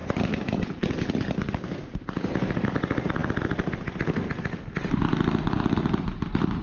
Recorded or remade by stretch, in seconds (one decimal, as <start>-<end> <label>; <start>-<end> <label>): 0.0-0.9 remade; 0.9-1.8 recorded; 1.8-2.4 remade; 2.4-6.6 recorded